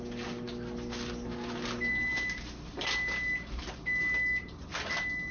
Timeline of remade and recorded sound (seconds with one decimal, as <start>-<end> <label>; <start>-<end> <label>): 0.0-5.3 recorded